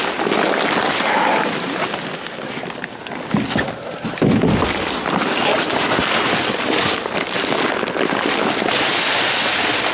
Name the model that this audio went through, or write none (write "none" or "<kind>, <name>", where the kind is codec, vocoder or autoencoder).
none